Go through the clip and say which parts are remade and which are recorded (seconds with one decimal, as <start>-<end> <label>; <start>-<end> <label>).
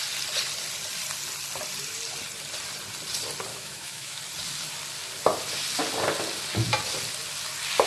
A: 0.0-3.5 recorded; 3.5-4.2 remade; 4.2-7.9 recorded